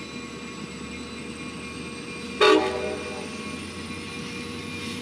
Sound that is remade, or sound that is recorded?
recorded